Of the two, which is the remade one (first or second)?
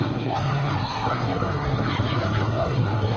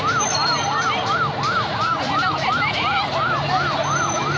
first